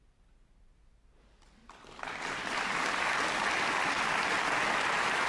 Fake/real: real